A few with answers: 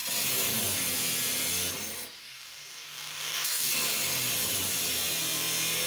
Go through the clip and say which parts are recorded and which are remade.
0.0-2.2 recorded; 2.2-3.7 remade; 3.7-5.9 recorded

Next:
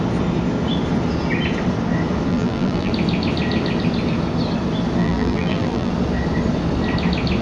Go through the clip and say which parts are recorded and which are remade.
0.0-2.3 recorded; 2.3-2.9 remade; 2.9-5.0 recorded; 5.0-5.9 remade; 5.9-7.4 recorded

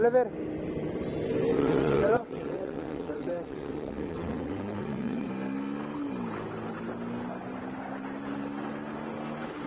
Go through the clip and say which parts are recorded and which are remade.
0.0-1.5 recorded; 1.5-5.3 remade; 5.3-9.7 recorded

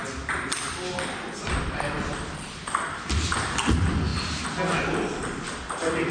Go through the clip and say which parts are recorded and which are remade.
0.0-6.1 recorded

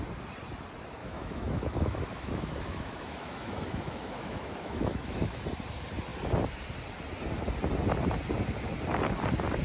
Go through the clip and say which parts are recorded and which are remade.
0.0-1.0 recorded; 1.0-5.4 remade; 5.4-9.6 recorded

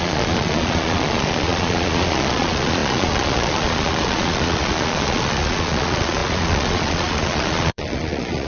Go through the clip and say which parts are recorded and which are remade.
0.0-8.5 remade